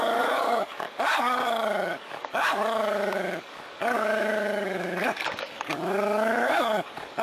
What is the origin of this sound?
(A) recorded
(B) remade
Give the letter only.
B